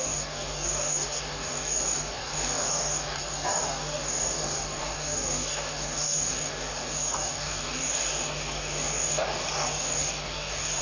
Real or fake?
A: fake